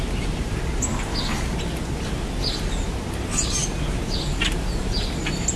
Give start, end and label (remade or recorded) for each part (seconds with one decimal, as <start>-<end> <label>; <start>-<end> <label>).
0.0-5.6 recorded